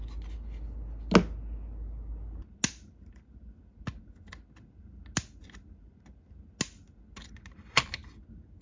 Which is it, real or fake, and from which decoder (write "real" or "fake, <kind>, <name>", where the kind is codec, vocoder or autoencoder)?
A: real